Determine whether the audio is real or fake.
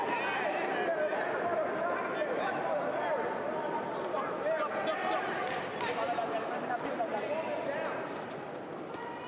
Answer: real